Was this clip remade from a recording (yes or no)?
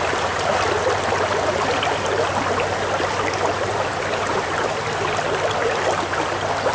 no